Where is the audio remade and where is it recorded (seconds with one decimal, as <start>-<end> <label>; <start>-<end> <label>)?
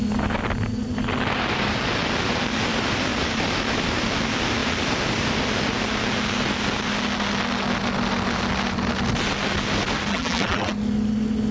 0.0-10.1 recorded; 10.1-10.7 remade; 10.7-11.5 recorded